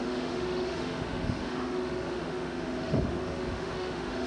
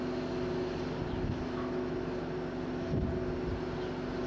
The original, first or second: second